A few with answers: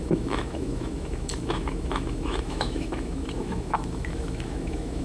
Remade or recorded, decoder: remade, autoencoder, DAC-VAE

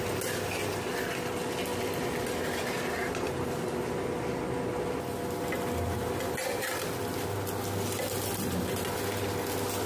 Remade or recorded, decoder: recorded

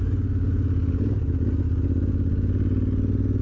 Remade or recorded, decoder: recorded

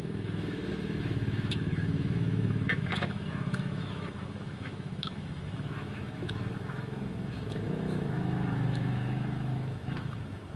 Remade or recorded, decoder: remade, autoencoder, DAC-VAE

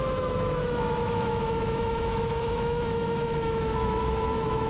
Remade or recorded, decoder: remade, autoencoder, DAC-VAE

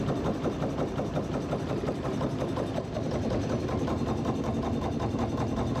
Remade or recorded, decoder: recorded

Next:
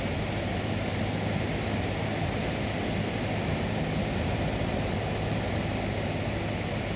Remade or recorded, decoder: recorded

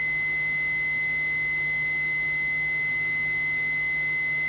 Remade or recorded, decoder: recorded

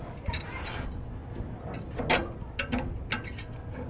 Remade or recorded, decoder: recorded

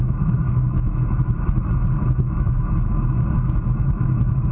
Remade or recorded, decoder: remade, autoencoder, DAC-VAE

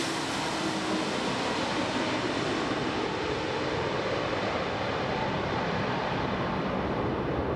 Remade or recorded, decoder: recorded